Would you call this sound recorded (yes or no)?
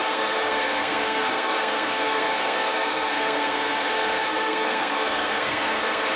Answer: no